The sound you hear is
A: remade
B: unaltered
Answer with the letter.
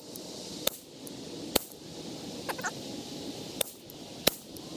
A